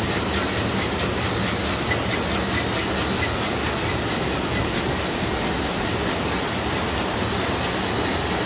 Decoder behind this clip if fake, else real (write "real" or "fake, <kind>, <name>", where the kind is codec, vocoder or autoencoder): real